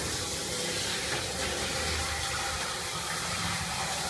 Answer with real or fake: real